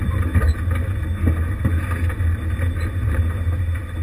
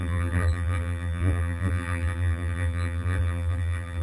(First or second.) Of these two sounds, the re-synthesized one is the second